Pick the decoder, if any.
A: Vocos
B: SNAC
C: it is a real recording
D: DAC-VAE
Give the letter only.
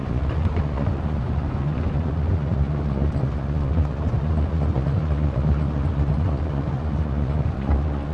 A